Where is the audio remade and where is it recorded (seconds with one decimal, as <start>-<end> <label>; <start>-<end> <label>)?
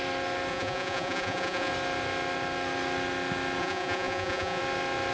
0.0-0.5 recorded; 0.5-1.7 remade; 1.7-3.6 recorded; 3.6-4.6 remade; 4.6-5.1 recorded